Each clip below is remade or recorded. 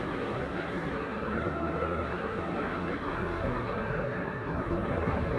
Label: remade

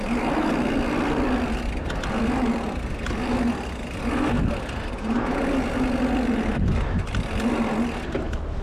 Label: recorded